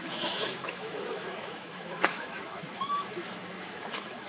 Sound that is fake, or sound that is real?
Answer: fake